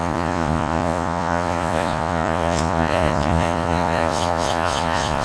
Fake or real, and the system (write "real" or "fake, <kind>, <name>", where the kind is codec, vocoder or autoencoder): fake, vocoder, Vocos